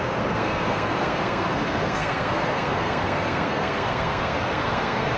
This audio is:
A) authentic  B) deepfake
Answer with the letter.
B